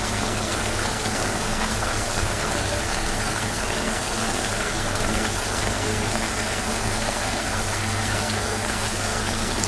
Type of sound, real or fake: fake